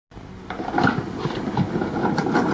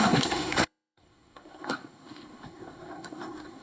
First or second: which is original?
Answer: first